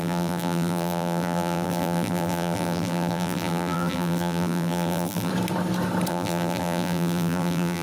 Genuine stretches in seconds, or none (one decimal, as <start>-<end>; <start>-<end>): 5.3-6.1